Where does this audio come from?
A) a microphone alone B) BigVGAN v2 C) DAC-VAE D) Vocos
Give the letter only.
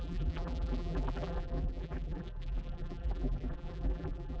B